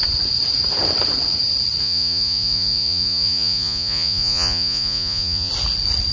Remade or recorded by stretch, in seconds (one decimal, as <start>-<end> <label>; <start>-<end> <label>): 0.0-1.8 recorded; 1.8-5.5 remade; 5.5-6.1 recorded